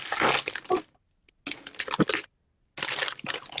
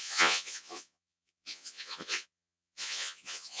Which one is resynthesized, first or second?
second